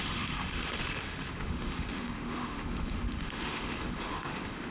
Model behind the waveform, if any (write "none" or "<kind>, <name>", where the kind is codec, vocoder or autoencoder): autoencoder, DAC-VAE